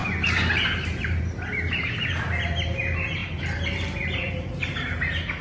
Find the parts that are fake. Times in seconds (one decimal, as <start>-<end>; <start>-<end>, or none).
none